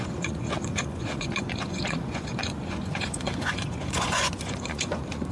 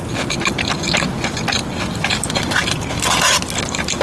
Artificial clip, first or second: first